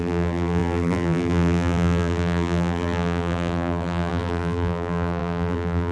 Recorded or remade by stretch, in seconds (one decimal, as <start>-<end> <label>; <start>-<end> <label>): 0.0-5.9 remade